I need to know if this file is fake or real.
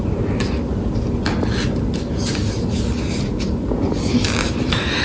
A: real